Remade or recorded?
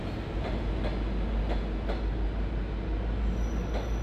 recorded